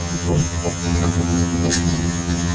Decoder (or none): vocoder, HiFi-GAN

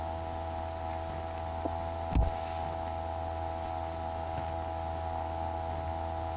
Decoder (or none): none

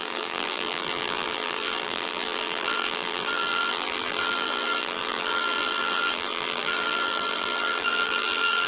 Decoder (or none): vocoder, BigVGAN v2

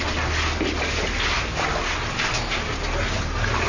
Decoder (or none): none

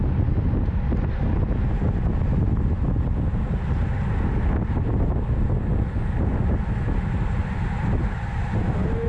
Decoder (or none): none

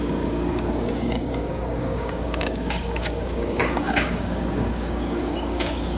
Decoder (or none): codec, DAC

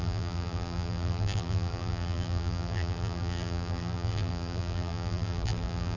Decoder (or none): vocoder, BigVGAN v2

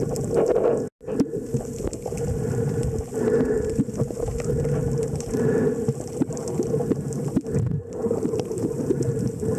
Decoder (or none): none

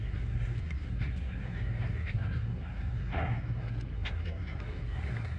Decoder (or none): codec, SNAC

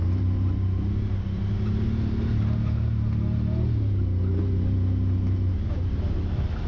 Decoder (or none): none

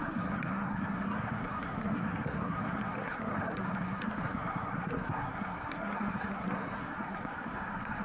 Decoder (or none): codec, SNAC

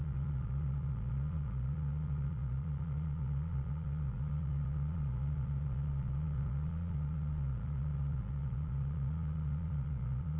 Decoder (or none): vocoder, Vocos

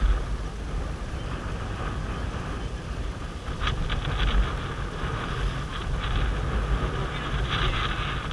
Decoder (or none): none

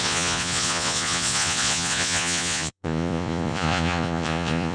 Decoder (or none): vocoder, Vocos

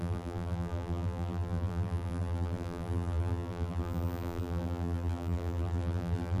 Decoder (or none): vocoder, BigVGAN v2